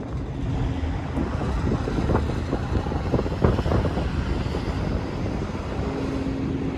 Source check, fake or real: real